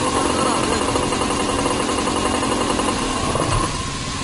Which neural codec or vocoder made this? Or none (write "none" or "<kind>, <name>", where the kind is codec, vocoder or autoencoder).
none